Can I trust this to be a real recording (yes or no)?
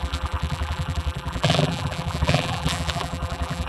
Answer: no